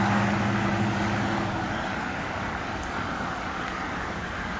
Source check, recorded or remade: remade